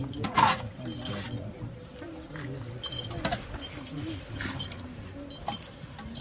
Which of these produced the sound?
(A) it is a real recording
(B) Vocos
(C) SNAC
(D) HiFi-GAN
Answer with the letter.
A